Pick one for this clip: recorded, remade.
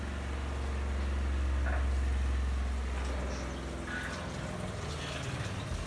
recorded